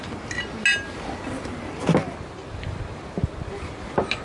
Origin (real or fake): real